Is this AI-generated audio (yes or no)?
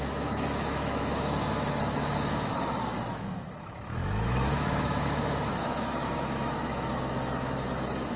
yes